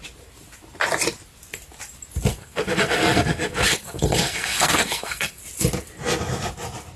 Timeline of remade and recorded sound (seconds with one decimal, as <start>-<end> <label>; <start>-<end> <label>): 0.0-2.3 recorded; 2.3-5.4 remade; 5.4-7.0 recorded